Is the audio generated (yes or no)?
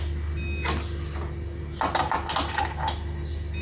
no